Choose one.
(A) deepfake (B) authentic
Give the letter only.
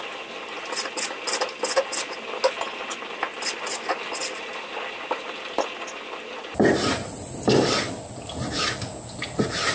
B